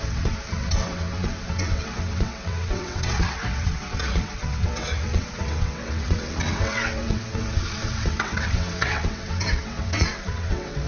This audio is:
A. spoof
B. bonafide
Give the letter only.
A